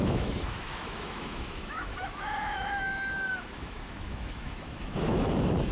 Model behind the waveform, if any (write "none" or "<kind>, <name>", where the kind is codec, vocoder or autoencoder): autoencoder, DAC-VAE